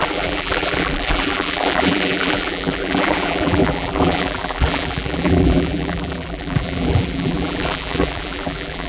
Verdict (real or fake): fake